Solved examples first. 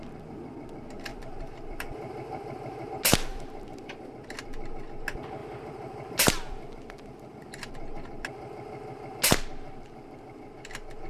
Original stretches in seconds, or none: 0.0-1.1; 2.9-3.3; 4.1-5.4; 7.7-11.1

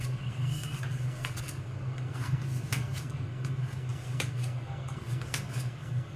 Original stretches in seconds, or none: none

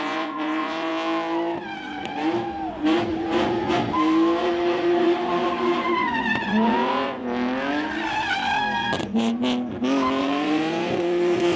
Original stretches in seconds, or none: 0.9-2.7; 3.8-4.4; 7.2-9.0; 9.4-10.2

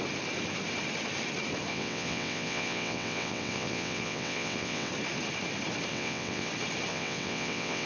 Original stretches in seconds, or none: 0.0-1.7; 4.9-5.9; 6.5-6.9

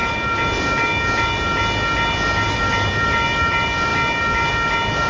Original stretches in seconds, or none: 0.0-5.1